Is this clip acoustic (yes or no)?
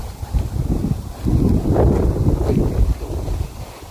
yes